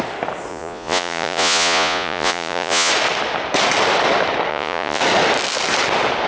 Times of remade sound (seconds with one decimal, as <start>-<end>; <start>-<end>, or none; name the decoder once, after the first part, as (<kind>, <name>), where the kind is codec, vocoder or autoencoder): 0.5-2.9 (vocoder, Vocos); 4.5-5.0